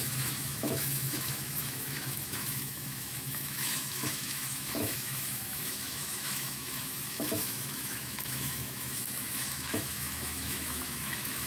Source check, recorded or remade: remade